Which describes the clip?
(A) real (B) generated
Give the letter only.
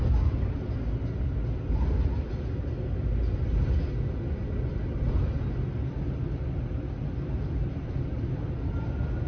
A